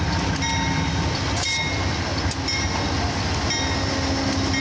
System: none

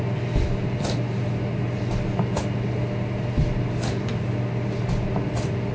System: none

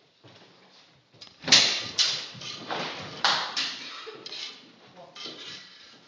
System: vocoder, BigVGAN v2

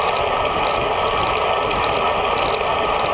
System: none